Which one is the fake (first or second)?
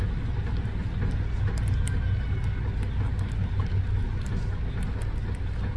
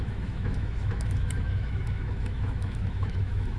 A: second